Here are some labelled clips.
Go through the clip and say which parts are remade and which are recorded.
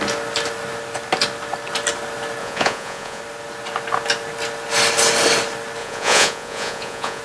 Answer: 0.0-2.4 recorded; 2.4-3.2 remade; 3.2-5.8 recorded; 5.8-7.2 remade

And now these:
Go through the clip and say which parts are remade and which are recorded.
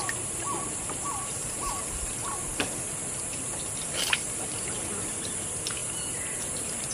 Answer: 0.0-6.9 recorded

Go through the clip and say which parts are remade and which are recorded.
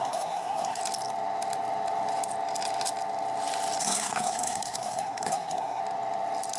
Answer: 0.0-0.8 remade; 0.8-3.8 recorded; 3.8-5.8 remade; 5.8-6.6 recorded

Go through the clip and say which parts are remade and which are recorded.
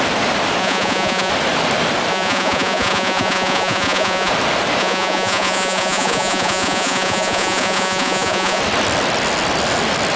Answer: 0.0-0.6 recorded; 0.6-1.3 remade; 1.3-2.1 recorded; 2.1-4.3 remade; 4.3-4.8 recorded; 4.8-8.6 remade; 8.6-10.2 recorded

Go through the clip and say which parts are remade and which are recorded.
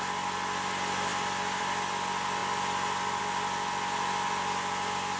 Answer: 0.0-5.2 recorded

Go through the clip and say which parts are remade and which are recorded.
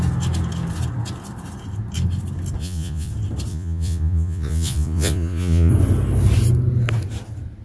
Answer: 0.0-2.6 recorded; 2.6-3.1 remade; 3.1-3.5 recorded; 3.5-5.7 remade; 5.7-7.6 recorded